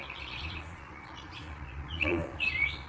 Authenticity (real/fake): fake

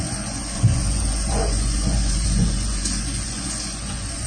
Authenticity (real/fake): fake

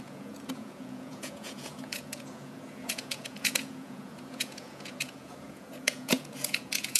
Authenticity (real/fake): fake